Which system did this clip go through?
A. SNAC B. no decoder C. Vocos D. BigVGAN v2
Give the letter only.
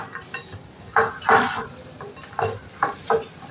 B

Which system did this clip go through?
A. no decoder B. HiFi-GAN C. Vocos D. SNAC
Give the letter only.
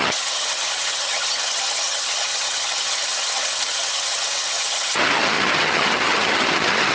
B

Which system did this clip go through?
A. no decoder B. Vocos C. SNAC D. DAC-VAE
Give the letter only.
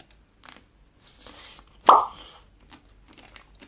A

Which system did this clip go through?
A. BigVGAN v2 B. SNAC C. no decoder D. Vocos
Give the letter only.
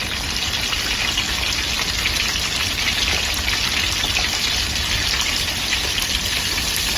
C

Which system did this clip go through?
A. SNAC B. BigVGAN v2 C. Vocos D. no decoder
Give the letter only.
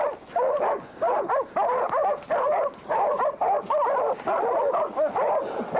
D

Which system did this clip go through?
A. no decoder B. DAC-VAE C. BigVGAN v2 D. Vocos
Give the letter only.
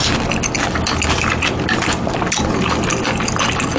A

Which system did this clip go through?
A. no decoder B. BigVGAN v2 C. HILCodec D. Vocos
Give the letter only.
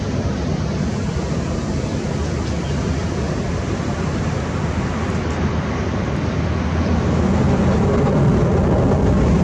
A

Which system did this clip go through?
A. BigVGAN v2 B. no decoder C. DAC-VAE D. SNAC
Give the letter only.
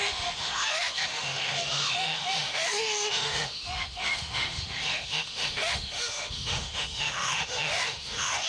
C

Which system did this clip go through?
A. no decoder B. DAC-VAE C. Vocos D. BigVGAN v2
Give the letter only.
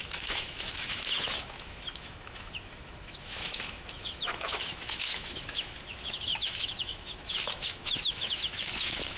B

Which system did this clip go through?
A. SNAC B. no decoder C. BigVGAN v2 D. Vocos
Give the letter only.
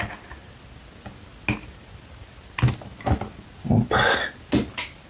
B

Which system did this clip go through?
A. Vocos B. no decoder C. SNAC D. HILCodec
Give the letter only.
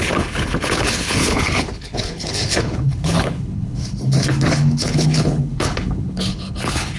D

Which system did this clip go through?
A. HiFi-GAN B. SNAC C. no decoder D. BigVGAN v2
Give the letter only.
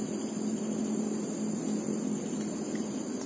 C